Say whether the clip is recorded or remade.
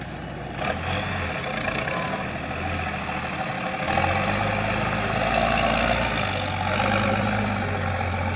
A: recorded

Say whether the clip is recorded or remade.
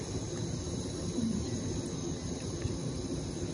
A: recorded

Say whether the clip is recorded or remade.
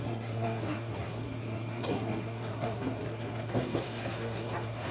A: remade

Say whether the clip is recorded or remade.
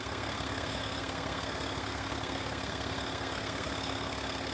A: remade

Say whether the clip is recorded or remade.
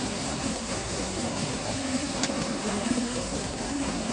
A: remade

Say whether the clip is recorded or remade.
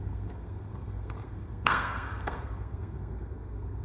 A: remade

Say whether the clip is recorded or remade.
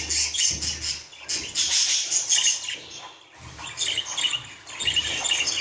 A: recorded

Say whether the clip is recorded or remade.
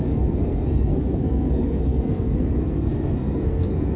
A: remade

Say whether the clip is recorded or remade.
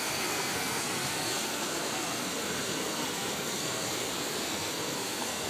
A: remade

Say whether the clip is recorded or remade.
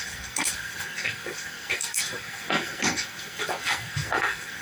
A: remade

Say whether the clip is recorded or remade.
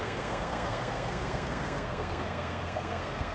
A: remade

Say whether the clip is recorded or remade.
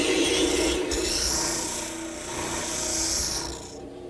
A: recorded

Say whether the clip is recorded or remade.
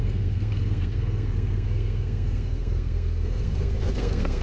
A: remade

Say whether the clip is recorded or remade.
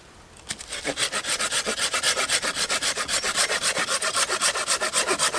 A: recorded